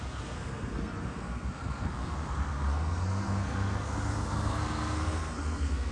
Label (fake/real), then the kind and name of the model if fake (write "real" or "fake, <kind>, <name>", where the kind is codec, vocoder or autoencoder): fake, codec, SNAC